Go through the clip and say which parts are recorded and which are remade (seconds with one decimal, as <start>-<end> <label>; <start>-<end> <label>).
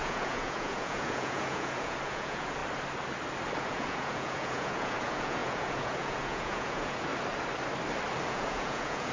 0.0-2.6 remade; 2.6-3.6 recorded; 3.6-7.1 remade; 7.1-8.3 recorded; 8.3-9.1 remade